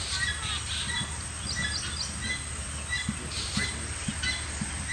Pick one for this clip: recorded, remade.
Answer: recorded